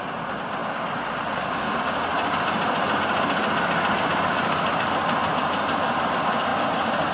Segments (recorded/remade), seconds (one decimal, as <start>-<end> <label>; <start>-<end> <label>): 0.0-7.1 recorded